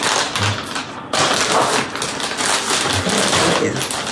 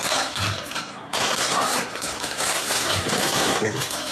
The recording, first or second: first